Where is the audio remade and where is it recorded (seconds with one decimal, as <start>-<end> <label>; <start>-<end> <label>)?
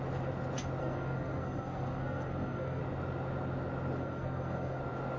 0.0-0.8 recorded; 0.8-2.8 remade; 2.8-4.0 recorded; 4.0-4.8 remade; 4.8-5.2 recorded